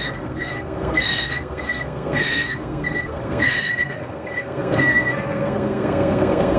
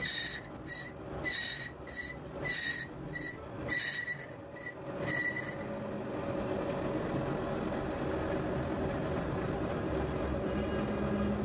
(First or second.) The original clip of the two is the second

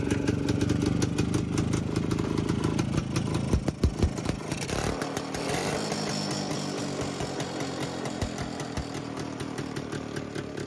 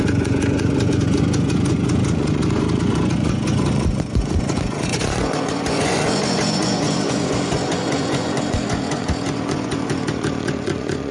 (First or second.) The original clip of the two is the first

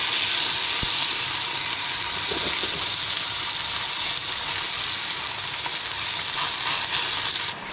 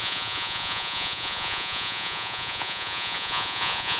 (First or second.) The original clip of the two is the first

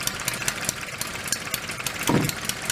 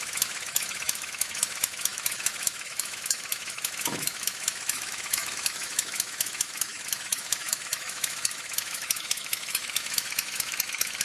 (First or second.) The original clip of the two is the first